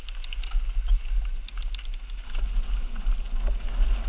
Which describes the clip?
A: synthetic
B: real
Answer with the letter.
B